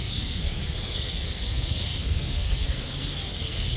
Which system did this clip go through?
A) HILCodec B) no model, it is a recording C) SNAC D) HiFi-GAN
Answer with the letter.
C